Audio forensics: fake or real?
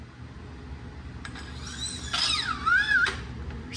real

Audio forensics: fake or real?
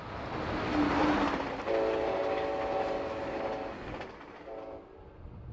real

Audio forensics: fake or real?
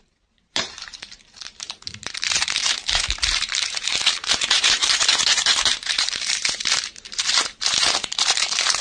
fake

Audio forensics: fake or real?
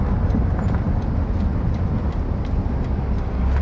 real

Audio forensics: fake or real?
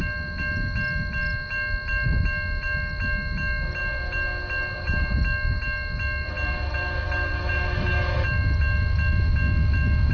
real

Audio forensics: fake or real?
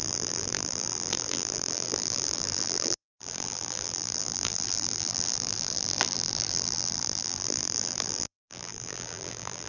fake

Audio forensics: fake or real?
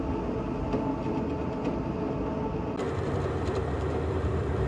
real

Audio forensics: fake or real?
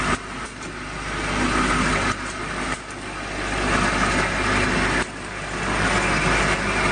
real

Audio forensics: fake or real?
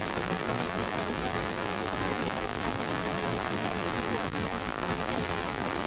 fake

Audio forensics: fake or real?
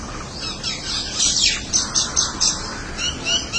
real